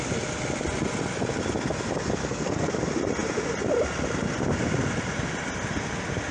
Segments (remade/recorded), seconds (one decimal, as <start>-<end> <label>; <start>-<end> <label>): 0.0-2.2 recorded; 2.2-2.7 remade; 2.7-6.3 recorded